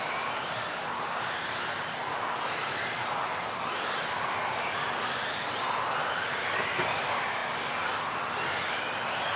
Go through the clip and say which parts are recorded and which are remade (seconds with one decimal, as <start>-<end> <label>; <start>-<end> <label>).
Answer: 0.0-9.4 recorded